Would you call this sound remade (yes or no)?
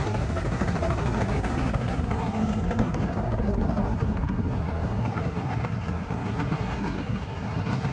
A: yes